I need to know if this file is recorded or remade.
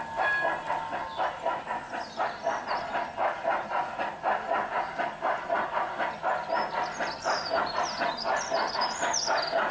recorded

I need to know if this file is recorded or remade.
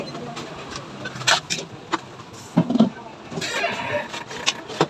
recorded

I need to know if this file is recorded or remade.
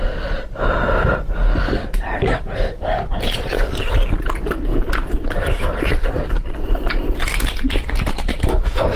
recorded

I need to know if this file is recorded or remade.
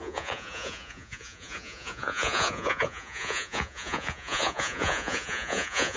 remade